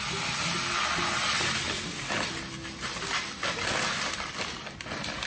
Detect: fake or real real